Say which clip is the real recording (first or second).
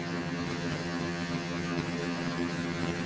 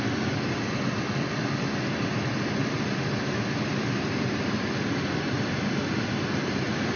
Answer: second